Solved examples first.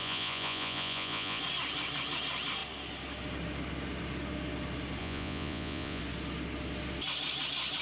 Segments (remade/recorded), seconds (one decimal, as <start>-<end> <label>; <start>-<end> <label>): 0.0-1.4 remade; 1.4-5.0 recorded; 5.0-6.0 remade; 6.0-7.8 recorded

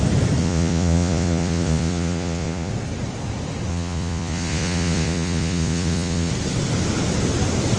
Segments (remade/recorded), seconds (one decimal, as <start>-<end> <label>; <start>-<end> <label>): 0.0-0.4 recorded; 0.4-2.7 remade; 2.7-3.7 recorded; 3.7-6.3 remade; 6.3-7.8 recorded

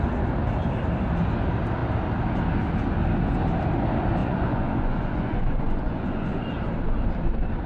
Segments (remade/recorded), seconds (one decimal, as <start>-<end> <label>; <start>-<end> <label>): 0.0-4.2 recorded; 4.2-6.5 remade; 6.5-7.7 recorded

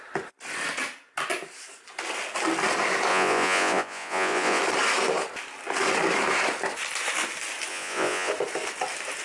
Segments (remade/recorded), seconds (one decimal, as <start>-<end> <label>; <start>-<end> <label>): 0.0-3.1 recorded; 3.1-4.6 remade; 4.6-7.7 recorded; 7.7-8.3 remade; 8.3-9.2 recorded